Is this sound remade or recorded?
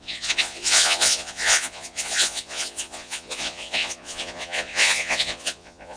remade